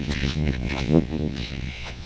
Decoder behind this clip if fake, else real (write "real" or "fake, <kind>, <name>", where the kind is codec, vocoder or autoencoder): fake, vocoder, Vocos